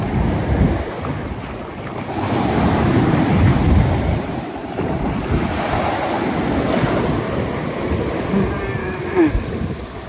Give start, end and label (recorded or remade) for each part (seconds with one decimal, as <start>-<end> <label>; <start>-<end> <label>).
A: 0.0-8.8 recorded; 8.8-9.3 remade; 9.3-10.1 recorded